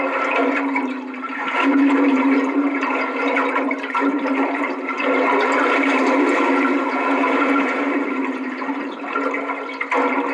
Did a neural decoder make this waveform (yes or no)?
yes